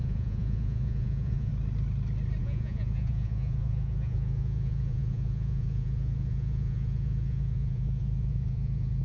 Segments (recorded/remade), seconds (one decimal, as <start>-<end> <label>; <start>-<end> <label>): 0.0-1.5 remade; 1.5-2.4 recorded; 2.4-9.0 remade